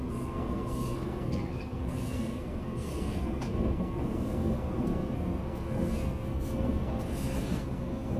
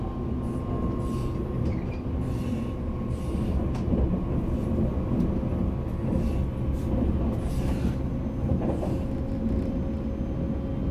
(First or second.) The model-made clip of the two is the first